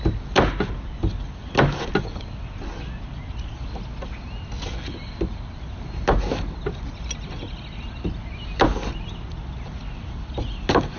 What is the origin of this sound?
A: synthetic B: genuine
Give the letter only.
B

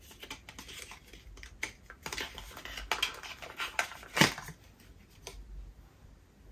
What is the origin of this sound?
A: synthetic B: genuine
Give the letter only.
B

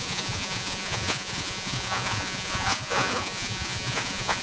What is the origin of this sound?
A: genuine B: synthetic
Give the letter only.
B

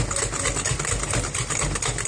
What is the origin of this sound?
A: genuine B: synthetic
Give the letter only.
A